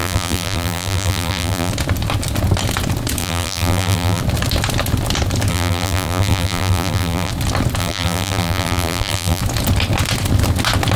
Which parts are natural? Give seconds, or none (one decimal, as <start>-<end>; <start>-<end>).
1.7-3.2; 4.2-5.5; 7.3-7.8; 9.4-11.0